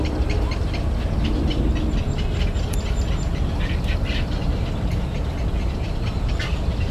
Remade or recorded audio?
recorded